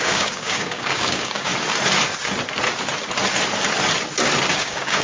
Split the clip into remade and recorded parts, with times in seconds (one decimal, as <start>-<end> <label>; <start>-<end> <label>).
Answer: 0.0-1.5 remade; 1.5-4.5 recorded; 4.5-5.0 remade